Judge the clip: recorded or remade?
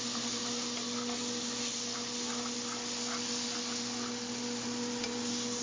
recorded